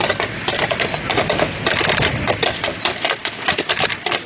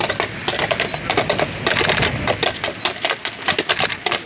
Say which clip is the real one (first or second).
second